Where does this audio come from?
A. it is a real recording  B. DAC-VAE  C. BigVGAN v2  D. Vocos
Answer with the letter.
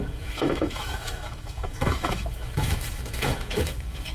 B